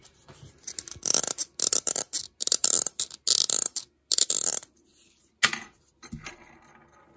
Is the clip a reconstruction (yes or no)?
no